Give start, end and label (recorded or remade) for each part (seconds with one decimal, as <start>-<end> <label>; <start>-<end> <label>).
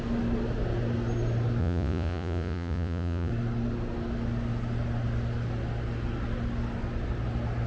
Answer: 0.0-1.6 recorded; 1.6-3.3 remade; 3.3-7.7 recorded